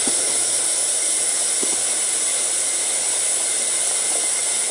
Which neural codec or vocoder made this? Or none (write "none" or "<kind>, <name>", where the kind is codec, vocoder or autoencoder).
none